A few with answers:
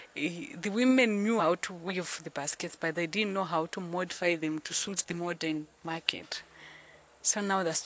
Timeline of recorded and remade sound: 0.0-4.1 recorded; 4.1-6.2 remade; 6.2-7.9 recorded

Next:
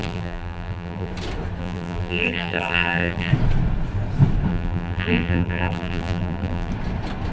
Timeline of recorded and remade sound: 0.0-1.1 remade; 1.1-1.6 recorded; 1.6-3.3 remade; 3.3-4.5 recorded; 4.5-6.7 remade; 6.7-7.3 recorded